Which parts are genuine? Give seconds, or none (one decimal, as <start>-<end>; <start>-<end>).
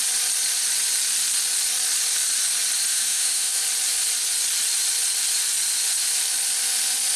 0.0-2.9; 3.6-7.2